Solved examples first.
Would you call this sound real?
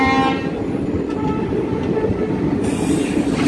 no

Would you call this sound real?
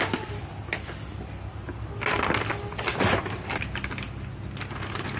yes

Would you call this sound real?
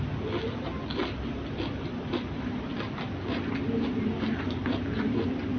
yes